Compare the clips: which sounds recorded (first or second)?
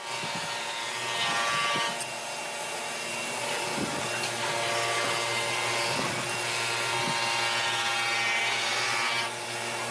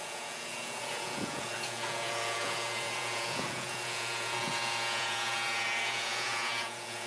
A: first